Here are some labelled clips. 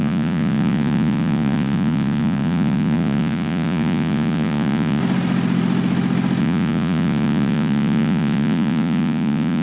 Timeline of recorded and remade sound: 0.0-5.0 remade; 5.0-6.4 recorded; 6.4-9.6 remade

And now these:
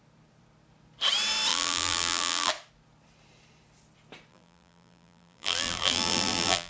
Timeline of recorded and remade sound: 0.0-1.5 recorded; 1.5-2.5 remade; 2.5-4.3 recorded; 4.3-6.7 remade

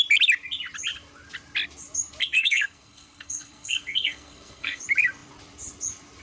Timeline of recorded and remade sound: 0.0-2.2 recorded; 2.2-4.8 remade; 4.8-6.2 recorded

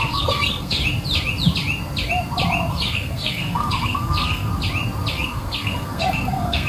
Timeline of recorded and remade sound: 0.0-0.8 remade; 0.8-2.7 recorded; 2.7-4.5 remade; 4.5-5.1 recorded; 5.1-6.7 remade

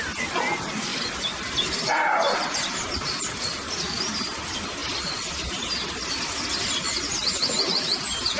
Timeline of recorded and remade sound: 0.0-0.9 recorded; 0.9-3.2 remade; 3.2-8.4 recorded